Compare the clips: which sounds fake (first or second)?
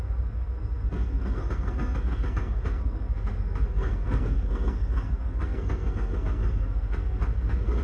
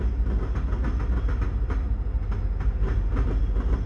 first